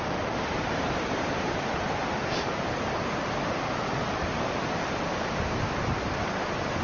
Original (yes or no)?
no